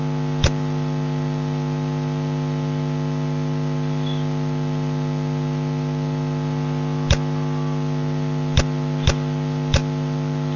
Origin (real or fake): real